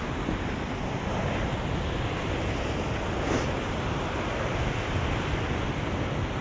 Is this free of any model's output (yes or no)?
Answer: yes